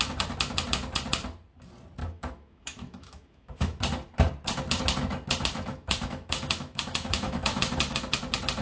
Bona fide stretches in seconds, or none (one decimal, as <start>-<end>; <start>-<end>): 0.0-2.0; 3.8-5.7; 8.0-8.6